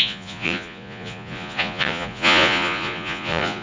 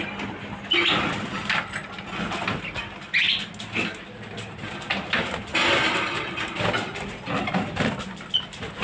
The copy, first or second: first